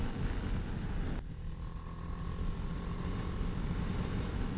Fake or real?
real